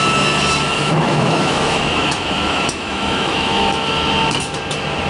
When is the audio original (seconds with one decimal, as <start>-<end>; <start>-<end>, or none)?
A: 0.0-0.8; 3.9-5.1